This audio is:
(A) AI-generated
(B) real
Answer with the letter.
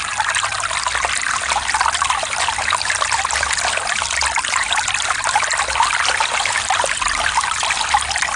B